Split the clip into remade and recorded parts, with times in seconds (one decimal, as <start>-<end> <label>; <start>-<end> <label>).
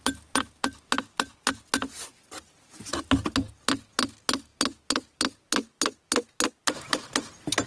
0.0-7.7 recorded